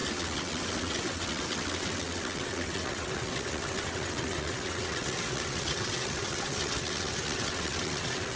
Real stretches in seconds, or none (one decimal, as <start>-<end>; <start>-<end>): none